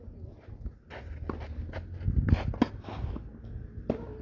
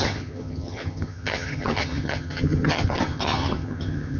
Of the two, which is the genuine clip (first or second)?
first